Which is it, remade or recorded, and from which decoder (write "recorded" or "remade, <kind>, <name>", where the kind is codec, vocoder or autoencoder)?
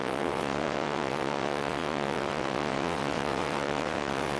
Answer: remade, vocoder, WaveNeXt